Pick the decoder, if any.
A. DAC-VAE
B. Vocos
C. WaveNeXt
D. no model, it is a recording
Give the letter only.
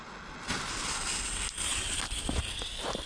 D